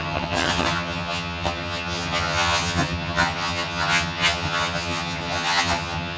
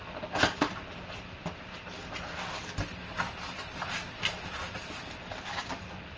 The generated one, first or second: first